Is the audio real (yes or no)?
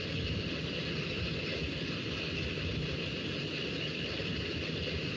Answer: yes